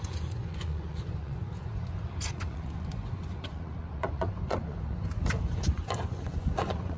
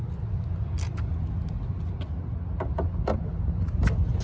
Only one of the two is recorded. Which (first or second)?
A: second